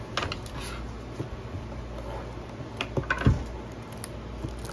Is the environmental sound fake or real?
real